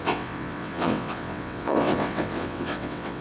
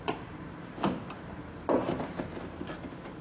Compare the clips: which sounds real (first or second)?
second